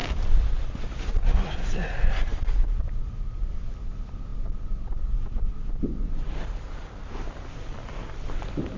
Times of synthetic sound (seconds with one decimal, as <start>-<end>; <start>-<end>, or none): none